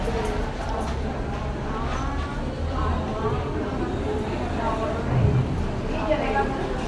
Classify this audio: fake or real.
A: real